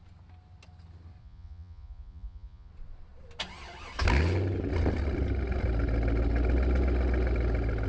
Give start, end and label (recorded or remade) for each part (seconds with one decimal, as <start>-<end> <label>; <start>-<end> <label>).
0.0-1.2 recorded; 1.2-2.7 remade; 2.7-7.9 recorded